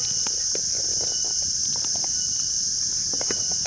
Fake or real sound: real